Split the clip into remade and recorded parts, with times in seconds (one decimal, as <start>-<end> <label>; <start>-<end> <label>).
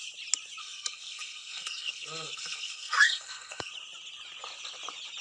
0.0-0.6 recorded; 0.6-3.7 remade; 3.7-5.2 recorded